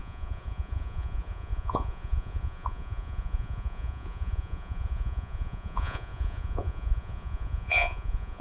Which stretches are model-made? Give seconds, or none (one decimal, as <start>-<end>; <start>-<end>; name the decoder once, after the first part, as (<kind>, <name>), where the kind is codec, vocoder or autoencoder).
0.0-8.4 (vocoder, Vocos)

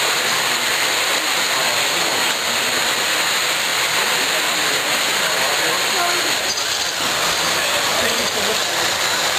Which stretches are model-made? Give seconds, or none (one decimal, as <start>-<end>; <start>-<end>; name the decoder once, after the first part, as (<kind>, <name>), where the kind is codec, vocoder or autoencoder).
7.9-8.9 (vocoder, BigVGAN v2)

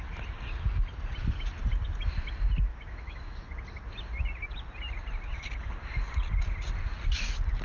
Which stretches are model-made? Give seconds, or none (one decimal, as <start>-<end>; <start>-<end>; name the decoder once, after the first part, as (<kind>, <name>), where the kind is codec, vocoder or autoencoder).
2.7-3.5 (autoencoder, DAC-VAE)